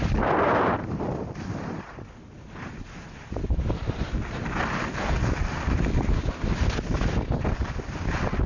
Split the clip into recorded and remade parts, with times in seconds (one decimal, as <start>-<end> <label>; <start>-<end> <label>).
0.0-8.5 recorded